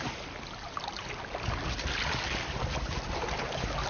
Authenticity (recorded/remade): recorded